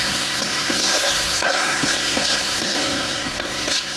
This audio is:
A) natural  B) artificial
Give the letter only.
B